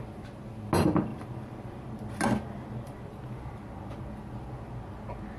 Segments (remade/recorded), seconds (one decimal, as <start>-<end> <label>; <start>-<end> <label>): 0.0-1.1 recorded; 1.1-2.1 remade; 2.1-5.4 recorded